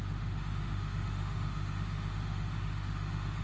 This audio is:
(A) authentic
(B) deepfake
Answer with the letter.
B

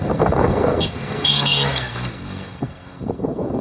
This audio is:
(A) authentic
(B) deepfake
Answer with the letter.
B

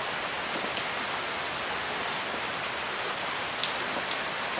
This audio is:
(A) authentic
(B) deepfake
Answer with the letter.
A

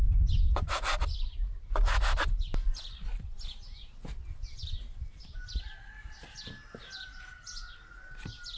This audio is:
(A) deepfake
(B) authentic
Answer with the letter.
B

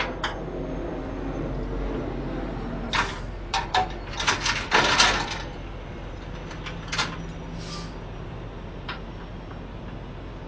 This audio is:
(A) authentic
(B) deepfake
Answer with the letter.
A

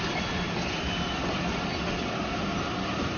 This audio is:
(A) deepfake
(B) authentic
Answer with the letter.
B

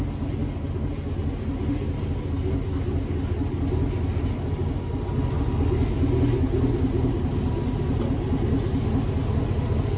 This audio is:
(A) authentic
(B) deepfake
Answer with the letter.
A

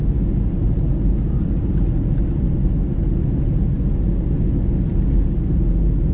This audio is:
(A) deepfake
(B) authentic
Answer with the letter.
B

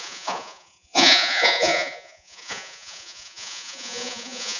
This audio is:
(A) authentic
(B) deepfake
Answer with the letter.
B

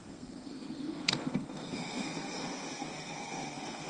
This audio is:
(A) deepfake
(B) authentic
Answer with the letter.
A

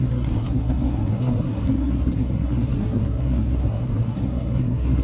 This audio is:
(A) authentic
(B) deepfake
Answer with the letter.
B